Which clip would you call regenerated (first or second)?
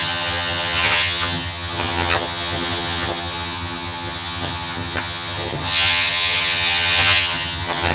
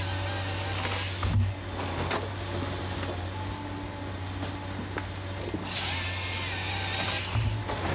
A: first